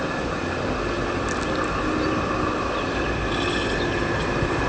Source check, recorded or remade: recorded